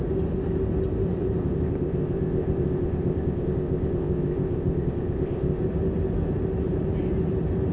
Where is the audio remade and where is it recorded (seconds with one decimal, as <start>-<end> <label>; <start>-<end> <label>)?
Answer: 0.0-1.4 recorded; 1.4-5.6 remade; 5.6-7.7 recorded